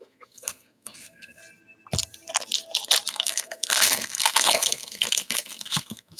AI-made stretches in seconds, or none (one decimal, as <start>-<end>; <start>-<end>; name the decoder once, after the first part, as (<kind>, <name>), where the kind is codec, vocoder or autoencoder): 0.0-1.4 (codec, SNAC); 3.1-6.2